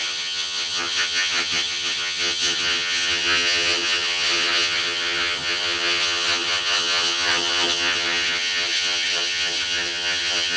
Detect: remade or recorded remade